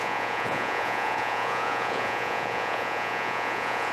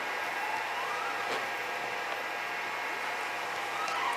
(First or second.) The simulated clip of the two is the first